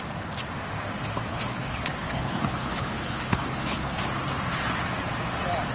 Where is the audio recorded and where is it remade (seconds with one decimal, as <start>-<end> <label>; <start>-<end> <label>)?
0.0-1.3 recorded; 1.3-4.0 remade; 4.0-5.7 recorded